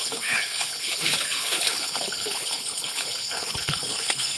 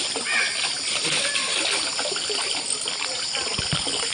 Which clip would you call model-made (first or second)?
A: first